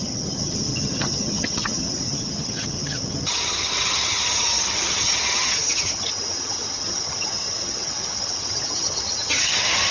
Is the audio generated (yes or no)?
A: yes